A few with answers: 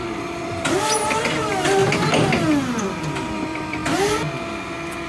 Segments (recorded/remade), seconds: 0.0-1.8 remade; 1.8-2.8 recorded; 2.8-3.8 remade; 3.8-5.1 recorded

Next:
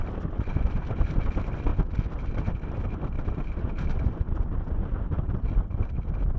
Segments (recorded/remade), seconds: 0.0-1.7 remade; 1.7-2.4 recorded; 2.4-6.4 remade

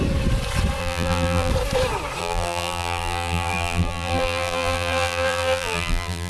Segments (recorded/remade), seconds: 0.0-0.8 recorded; 0.8-1.5 remade; 1.5-2.2 recorded; 2.2-6.3 remade